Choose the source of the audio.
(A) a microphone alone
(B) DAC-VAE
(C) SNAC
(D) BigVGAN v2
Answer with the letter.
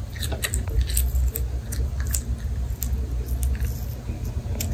A